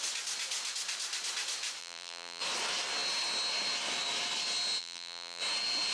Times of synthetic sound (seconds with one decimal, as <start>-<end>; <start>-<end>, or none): 1.8-2.4; 4.8-5.4